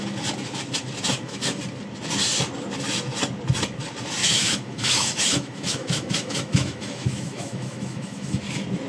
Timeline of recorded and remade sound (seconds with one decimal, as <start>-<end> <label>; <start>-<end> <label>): 0.0-1.1 recorded; 1.1-1.6 remade; 1.6-4.2 recorded; 4.2-8.4 remade; 8.4-8.9 recorded